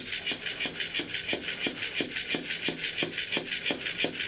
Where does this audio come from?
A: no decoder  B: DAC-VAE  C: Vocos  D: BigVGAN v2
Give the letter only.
A